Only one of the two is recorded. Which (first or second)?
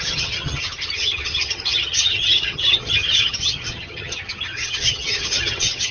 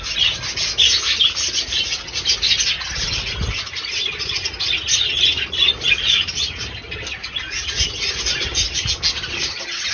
second